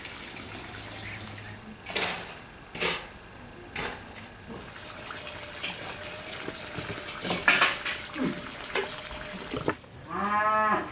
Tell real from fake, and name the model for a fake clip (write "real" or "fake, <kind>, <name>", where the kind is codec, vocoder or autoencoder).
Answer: real